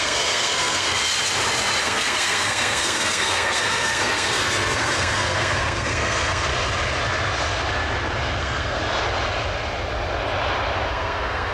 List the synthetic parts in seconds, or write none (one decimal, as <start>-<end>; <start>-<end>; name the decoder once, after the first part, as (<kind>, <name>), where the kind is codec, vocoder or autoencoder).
0.0-1.0 (codec, SNAC); 1.8-6.5; 8.4-8.8; 10.9-11.5